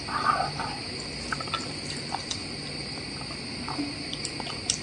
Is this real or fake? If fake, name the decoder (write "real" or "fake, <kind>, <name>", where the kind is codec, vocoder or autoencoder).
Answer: real